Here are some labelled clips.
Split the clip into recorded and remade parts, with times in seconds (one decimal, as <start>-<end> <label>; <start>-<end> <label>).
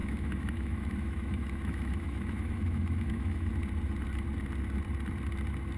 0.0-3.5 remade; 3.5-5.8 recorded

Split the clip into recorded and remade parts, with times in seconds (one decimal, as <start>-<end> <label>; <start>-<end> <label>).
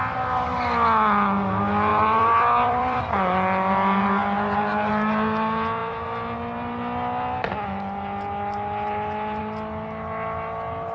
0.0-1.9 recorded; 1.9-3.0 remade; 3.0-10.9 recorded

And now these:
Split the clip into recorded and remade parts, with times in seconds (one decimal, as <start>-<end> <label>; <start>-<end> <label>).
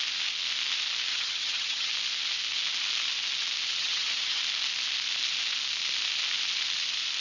0.0-1.1 recorded; 1.1-1.9 remade; 1.9-3.8 recorded; 3.8-4.4 remade; 4.4-7.2 recorded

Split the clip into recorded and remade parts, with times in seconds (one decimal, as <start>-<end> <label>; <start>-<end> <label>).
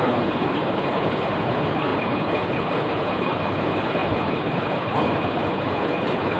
0.0-6.4 remade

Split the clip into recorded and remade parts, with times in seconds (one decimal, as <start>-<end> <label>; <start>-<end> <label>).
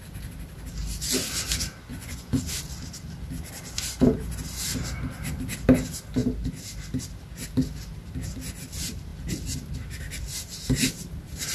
0.0-1.9 recorded; 1.9-2.4 remade; 2.4-11.5 recorded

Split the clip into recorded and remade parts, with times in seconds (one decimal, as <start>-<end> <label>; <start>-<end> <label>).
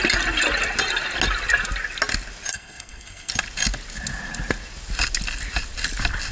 0.0-2.5 recorded; 2.5-3.3 remade; 3.3-6.3 recorded